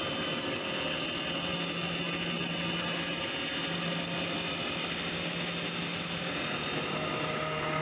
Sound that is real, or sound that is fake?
real